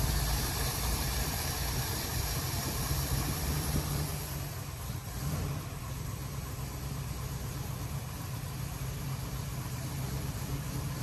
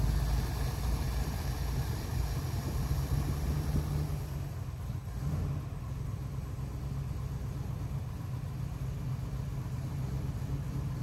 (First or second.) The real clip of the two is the second